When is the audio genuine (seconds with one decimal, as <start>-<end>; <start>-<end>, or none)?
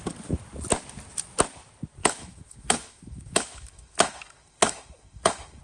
0.0-2.0